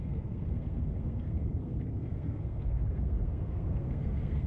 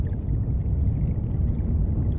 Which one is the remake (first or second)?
first